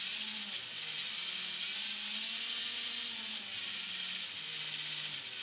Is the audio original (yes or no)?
yes